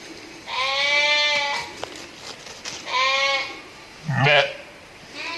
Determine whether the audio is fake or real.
real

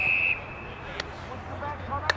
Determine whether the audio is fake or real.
real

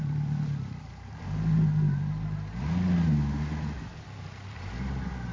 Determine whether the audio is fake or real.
real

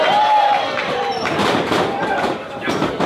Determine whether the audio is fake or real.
fake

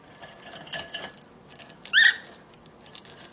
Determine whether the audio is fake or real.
real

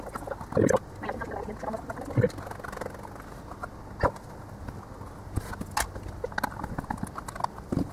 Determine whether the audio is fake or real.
real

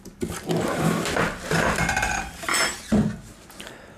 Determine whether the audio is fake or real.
real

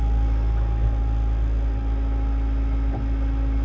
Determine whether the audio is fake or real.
real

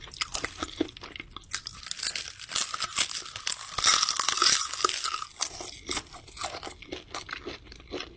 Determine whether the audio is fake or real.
real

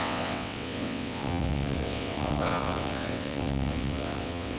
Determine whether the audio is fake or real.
fake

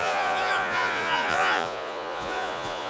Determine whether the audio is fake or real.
fake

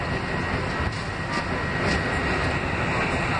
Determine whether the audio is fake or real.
real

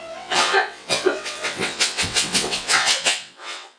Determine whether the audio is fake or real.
fake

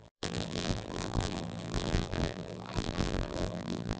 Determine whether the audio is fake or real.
fake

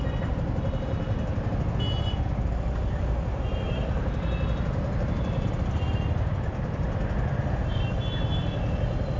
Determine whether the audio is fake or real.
real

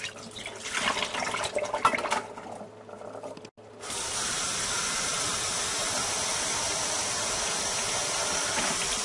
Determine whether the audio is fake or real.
real